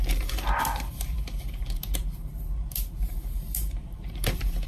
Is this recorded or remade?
remade